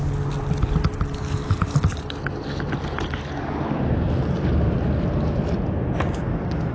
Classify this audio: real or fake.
real